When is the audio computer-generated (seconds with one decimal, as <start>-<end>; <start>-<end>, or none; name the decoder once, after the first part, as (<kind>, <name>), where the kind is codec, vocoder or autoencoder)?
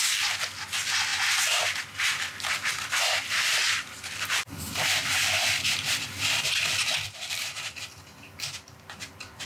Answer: 3.6-8.0 (vocoder, BigVGAN v2)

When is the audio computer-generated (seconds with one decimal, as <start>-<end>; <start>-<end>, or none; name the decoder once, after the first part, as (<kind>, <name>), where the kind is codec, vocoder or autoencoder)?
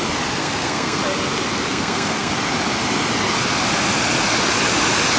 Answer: 0.4-1.0 (codec, SNAC); 1.7-2.3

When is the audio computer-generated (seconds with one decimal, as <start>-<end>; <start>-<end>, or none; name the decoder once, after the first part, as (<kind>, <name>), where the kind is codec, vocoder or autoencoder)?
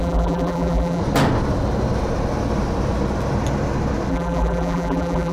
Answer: 0.0-1.0 (vocoder, BigVGAN v2); 4.1-5.3